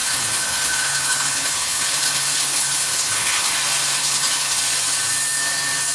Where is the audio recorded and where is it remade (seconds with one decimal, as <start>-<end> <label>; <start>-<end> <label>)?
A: 0.0-3.5 remade; 3.5-4.0 recorded; 4.0-4.6 remade; 4.6-5.9 recorded